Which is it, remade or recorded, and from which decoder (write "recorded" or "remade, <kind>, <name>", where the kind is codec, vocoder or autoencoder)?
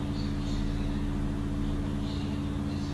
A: recorded